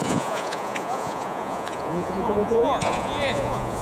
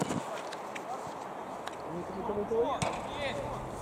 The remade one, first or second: first